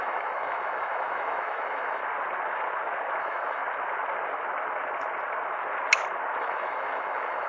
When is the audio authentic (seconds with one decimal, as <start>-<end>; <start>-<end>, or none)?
2.0-3.2; 3.6-6.4